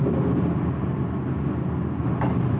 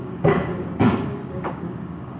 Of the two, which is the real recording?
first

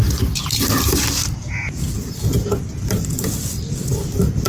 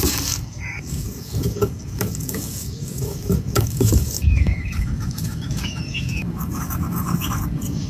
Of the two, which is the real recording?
first